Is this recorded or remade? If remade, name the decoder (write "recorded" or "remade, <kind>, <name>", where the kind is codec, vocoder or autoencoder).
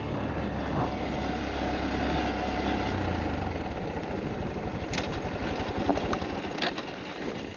recorded